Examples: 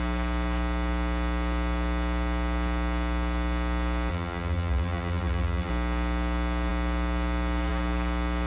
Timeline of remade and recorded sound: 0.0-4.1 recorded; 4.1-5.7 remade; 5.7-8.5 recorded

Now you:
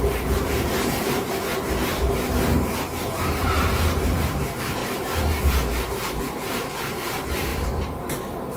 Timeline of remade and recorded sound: 0.0-4.8 remade; 4.8-6.2 recorded; 6.2-8.6 remade